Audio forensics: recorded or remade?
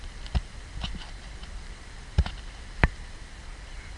remade